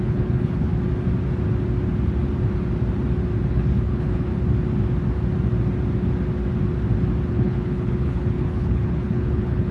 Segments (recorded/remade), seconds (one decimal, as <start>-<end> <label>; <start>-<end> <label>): 0.0-0.7 remade; 0.7-3.5 recorded; 3.5-4.3 remade; 4.3-7.3 recorded; 7.3-9.7 remade